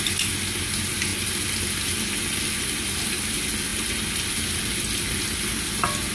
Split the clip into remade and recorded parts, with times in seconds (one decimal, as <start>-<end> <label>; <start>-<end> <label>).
0.0-6.1 recorded